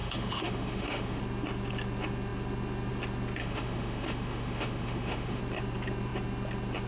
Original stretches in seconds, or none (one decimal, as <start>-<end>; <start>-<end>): 1.2-3.4; 5.4-6.9